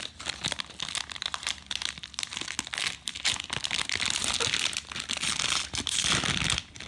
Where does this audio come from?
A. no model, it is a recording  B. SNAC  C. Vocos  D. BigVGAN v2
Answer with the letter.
A